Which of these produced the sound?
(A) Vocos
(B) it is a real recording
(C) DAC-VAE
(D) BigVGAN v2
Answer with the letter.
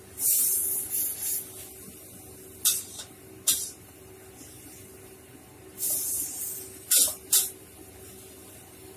B